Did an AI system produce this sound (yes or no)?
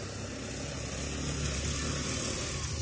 no